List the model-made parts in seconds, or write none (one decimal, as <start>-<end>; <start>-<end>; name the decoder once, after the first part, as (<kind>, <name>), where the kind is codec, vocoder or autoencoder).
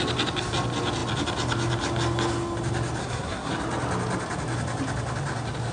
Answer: 3.0-3.5 (codec, SNAC)